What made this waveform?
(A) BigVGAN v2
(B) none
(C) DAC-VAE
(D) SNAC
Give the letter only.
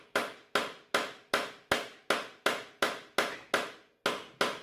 B